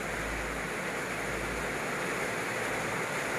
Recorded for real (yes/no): yes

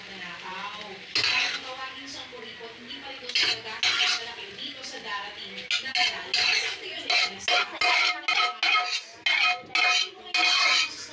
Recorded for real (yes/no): yes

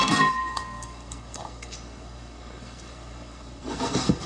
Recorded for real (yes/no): no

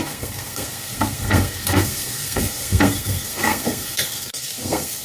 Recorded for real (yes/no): no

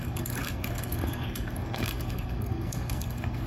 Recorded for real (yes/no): no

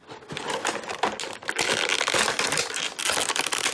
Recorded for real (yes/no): yes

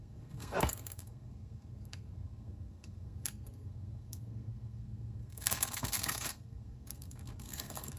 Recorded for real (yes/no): no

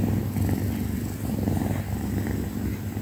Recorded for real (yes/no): yes